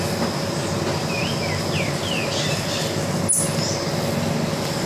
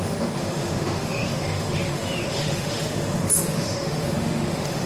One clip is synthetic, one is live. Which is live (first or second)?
first